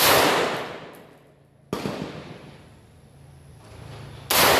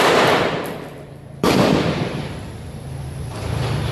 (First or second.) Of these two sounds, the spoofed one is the second